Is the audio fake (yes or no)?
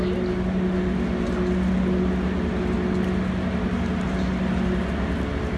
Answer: no